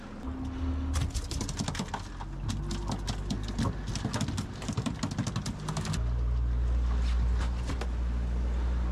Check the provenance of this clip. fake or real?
real